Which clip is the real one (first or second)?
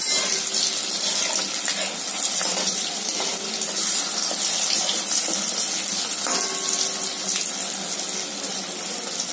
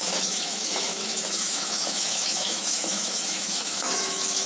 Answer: first